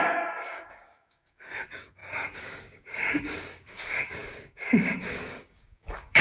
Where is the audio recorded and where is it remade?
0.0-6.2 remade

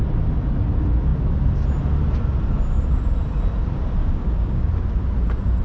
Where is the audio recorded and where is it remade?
0.0-4.0 recorded; 4.0-4.7 remade; 4.7-5.6 recorded

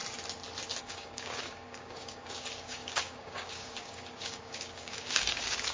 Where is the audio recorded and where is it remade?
0.0-0.8 recorded; 0.8-5.7 remade

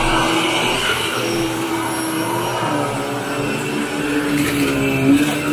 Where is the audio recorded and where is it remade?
0.0-0.8 recorded; 0.8-1.7 remade; 1.7-5.5 recorded

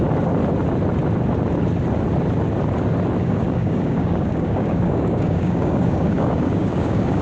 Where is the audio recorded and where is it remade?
0.0-3.2 recorded; 3.2-7.2 remade

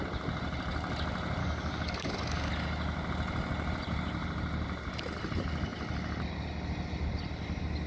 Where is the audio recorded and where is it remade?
0.0-1.4 recorded; 1.4-2.5 remade; 2.5-7.9 recorded

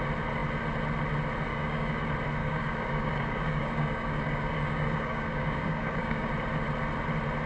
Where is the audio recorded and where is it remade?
0.0-1.5 recorded; 1.5-2.0 remade; 2.0-2.4 recorded; 2.4-6.3 remade; 6.3-7.5 recorded

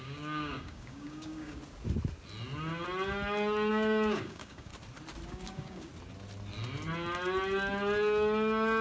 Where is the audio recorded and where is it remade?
0.0-1.6 remade; 1.6-3.7 recorded; 3.7-4.7 remade; 4.7-5.3 recorded; 5.3-5.9 remade; 5.9-8.8 recorded